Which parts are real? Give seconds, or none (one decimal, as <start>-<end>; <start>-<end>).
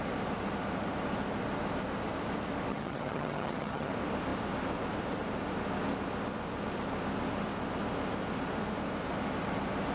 0.0-2.7; 3.9-9.9